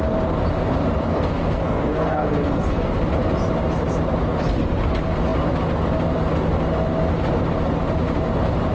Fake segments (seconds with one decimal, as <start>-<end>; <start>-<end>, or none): 1.1-2.9